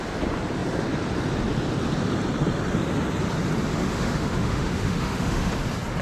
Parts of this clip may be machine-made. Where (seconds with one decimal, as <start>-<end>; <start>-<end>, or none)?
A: 3.7-5.5